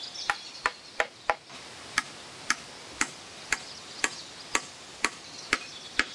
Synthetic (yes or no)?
yes